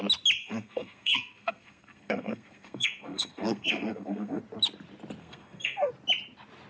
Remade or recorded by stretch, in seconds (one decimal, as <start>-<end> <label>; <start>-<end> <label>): 0.0-0.4 recorded; 0.4-4.4 remade; 4.4-5.2 recorded; 5.2-5.9 remade; 5.9-6.7 recorded